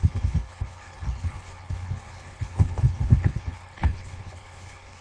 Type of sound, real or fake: fake